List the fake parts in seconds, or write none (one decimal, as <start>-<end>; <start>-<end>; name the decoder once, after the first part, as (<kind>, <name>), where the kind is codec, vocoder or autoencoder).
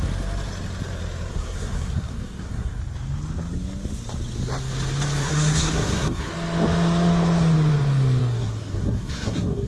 1.3-2.8 (codec, SNAC); 5.2-6.3; 8.2-9.7